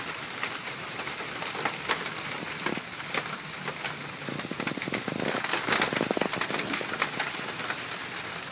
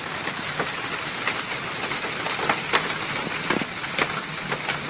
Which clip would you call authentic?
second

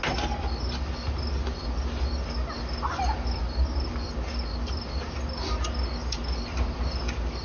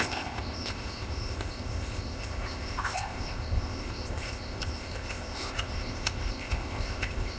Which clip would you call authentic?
first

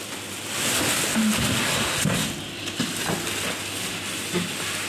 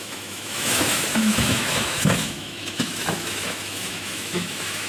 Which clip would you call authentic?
first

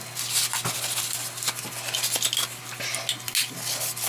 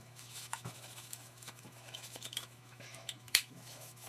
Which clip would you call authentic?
first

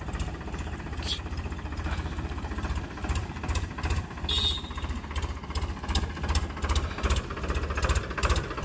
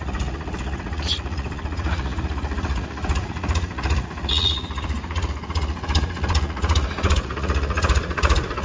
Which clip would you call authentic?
first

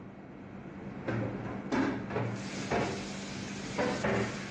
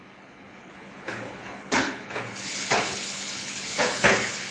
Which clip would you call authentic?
first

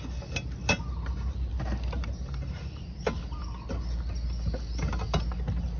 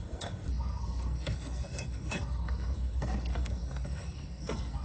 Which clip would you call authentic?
first